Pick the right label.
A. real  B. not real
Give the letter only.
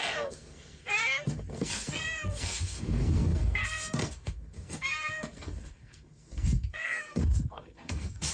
B